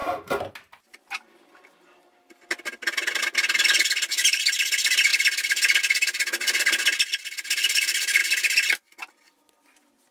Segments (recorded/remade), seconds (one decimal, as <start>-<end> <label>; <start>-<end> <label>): 0.0-10.1 recorded